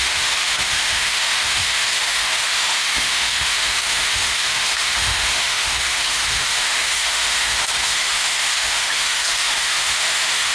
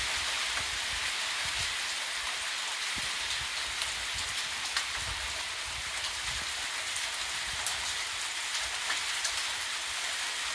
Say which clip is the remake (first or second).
first